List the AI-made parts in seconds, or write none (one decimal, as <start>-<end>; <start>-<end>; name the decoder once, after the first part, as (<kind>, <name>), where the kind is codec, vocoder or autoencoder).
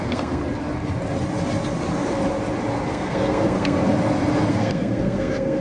0.0-0.4 (codec, SNAC); 2.9-3.8; 4.5-5.6